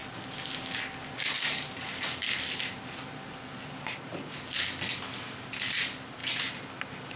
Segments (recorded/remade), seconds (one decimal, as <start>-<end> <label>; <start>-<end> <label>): 0.0-7.2 recorded